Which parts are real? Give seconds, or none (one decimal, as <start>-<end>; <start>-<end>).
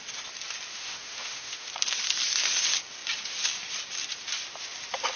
0.0-0.7; 1.7-5.2